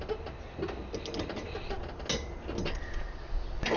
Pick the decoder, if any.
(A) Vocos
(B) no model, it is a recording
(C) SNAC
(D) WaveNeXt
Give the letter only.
B